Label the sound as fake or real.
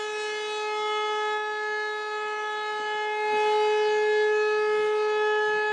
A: real